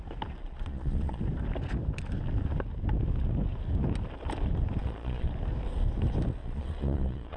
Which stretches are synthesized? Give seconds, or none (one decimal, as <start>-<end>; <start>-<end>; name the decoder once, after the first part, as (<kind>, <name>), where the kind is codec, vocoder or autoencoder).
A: 0.4-1.2 (vocoder, Vocos); 4.8-5.3; 6.4-7.4